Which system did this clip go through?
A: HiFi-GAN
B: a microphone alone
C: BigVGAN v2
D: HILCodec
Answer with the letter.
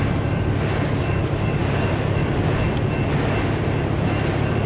B